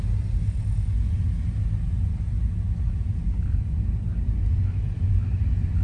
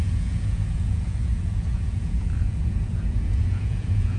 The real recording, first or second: first